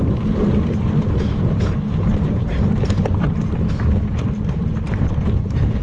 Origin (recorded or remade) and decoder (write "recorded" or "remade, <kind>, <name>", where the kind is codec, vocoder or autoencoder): remade, vocoder, BigVGAN v2